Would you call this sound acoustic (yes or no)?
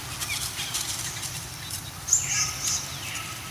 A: yes